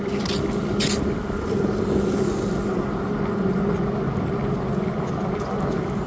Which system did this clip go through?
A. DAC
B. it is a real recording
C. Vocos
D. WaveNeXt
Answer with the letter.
B